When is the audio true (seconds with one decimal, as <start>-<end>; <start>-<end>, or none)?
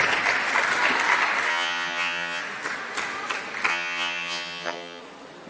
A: 0.0-1.5; 2.4-3.7; 5.0-5.5